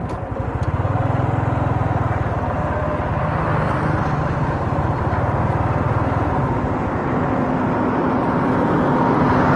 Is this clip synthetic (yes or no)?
no